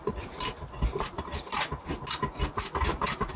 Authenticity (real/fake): real